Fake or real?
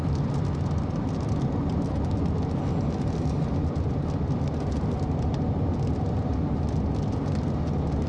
real